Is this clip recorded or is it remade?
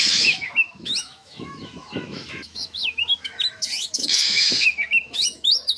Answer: remade